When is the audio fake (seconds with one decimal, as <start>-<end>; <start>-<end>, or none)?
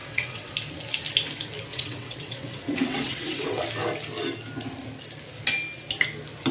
0.0-0.5; 1.7-3.6